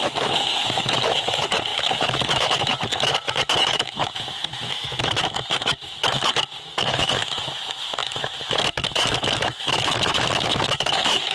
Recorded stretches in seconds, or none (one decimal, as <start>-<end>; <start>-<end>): none

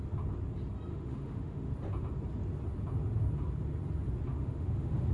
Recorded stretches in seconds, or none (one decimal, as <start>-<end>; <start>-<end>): 0.0-0.9; 1.7-4.3

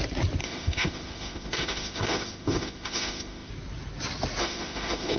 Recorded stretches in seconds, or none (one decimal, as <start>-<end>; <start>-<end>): 0.0-0.4; 3.5-4.4

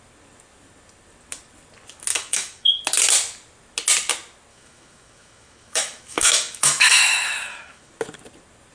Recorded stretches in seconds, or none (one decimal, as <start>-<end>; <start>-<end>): 0.0-2.1; 2.8-4.5; 7.9-8.7